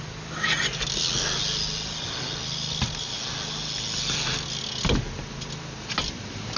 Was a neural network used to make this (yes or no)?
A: no